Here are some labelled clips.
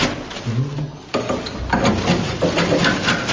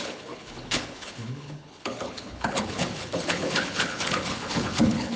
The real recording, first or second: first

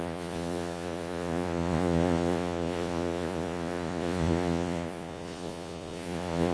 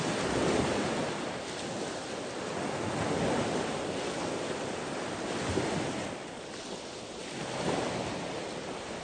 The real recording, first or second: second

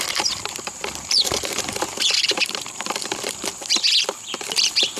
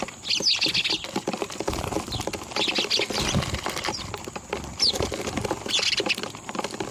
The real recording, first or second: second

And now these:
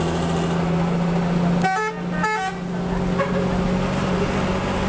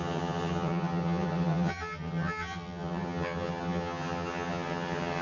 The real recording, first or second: first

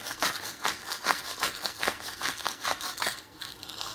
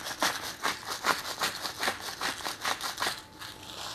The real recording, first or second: second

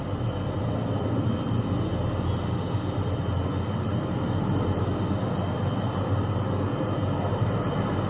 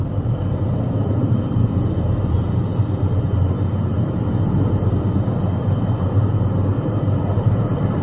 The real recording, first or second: first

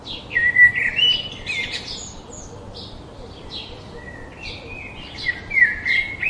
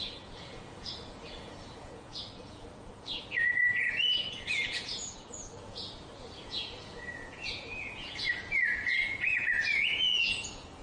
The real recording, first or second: first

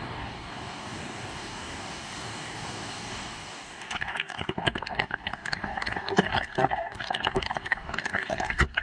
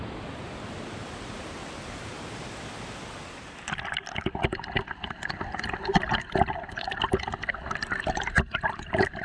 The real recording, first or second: second